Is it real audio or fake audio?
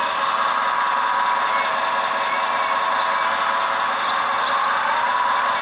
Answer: real